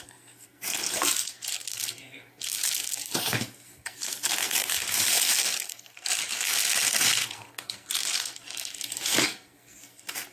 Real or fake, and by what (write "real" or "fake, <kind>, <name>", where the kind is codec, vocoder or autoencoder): fake, codec, SNAC